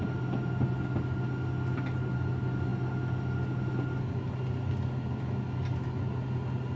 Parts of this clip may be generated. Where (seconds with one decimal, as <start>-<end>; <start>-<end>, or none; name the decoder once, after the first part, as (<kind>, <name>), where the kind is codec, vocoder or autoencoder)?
none